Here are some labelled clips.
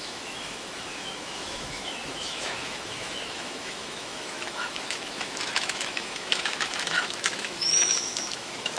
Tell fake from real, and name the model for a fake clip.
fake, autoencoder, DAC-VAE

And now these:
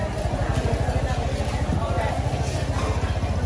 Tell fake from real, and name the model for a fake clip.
real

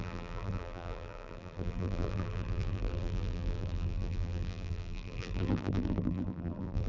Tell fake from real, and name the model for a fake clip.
fake, vocoder, BigVGAN v2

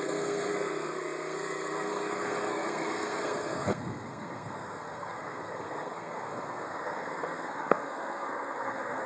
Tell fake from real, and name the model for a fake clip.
fake, codec, SNAC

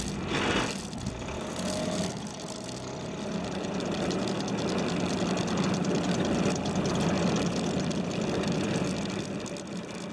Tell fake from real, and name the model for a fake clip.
real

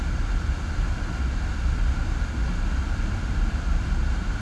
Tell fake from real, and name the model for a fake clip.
real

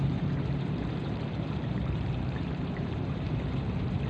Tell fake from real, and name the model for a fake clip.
fake, vocoder, BigVGAN v2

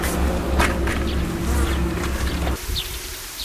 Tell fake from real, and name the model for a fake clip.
real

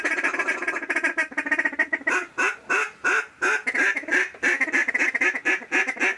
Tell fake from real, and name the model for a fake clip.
real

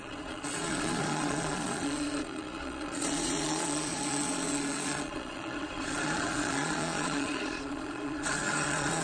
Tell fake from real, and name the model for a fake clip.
fake, vocoder, Vocos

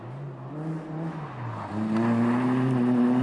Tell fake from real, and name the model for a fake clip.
real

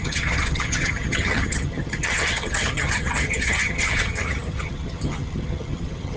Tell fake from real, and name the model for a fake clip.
fake, vocoder, HiFi-GAN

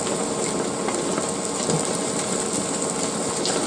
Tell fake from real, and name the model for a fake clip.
real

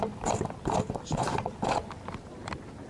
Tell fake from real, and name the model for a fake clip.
real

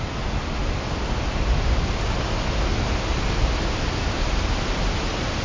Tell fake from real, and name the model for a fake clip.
real